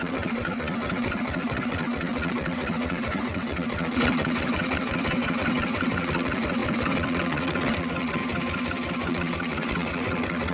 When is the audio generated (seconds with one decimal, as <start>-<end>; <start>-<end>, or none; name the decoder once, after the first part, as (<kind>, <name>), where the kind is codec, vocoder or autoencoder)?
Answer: 0.0-8.2 (vocoder, WaveNeXt); 9.1-10.5